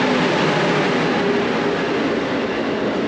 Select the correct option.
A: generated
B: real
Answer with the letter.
B